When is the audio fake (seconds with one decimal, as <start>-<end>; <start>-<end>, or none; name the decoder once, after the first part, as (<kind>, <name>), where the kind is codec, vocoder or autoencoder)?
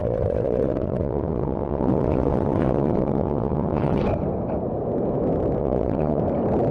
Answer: 0.0-4.0 (vocoder, WaveNeXt); 5.6-6.2